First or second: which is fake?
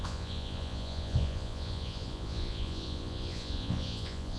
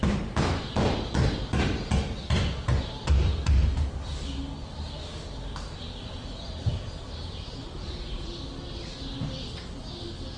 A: first